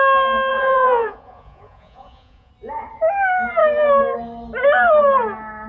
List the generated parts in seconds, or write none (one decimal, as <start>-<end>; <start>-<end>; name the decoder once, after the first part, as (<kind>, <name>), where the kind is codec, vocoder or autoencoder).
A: 0.5-2.5 (vocoder, Vocos)

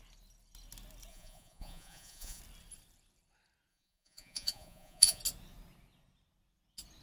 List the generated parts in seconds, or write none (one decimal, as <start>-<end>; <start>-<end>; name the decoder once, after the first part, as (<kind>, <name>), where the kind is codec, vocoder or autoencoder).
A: 1.1-2.4 (vocoder, Vocos); 3.7-5.2

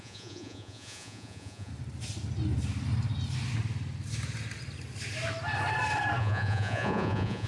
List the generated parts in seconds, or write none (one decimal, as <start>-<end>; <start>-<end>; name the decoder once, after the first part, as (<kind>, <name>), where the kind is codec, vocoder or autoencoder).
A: 0.0-1.7 (vocoder, Vocos); 6.2-7.5

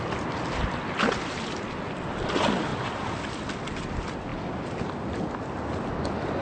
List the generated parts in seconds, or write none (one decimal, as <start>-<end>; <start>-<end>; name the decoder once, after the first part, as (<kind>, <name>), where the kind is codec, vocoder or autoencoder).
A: none

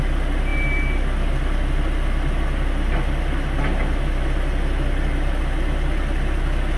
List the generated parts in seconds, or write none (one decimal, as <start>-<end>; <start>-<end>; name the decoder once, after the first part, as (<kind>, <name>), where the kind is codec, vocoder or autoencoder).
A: none

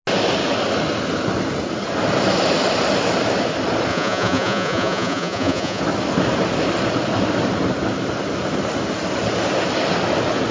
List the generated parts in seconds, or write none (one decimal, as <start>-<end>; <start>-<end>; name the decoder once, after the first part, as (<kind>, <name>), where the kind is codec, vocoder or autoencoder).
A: 3.9-5.8 (vocoder, Vocos)

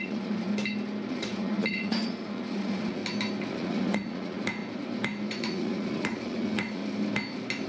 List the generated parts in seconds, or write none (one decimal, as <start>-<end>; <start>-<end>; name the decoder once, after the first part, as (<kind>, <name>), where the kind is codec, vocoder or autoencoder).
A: 0.0-0.5 (vocoder, Vocos); 1.1-3.0; 3.5-4.6; 5.3-6.8